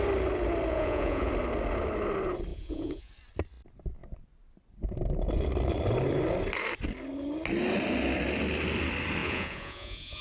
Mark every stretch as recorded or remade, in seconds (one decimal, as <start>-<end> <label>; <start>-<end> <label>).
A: 0.0-0.7 recorded; 0.7-1.3 remade; 1.3-2.5 recorded; 2.5-3.1 remade; 3.1-9.2 recorded; 9.2-10.2 remade